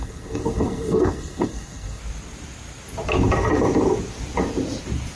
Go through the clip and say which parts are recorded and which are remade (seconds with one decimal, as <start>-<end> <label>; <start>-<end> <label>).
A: 0.0-2.0 remade; 2.0-5.2 recorded